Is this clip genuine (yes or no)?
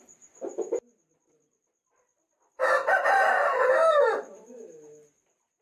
yes